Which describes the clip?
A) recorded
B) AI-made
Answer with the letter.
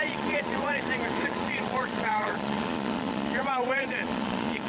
B